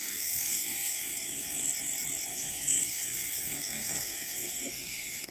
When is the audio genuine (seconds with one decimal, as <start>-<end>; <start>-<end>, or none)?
1.6-2.3